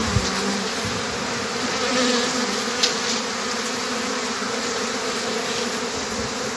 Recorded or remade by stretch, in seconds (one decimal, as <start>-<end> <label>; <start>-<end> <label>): 0.0-2.1 remade; 2.1-3.8 recorded; 3.8-4.8 remade; 4.8-6.6 recorded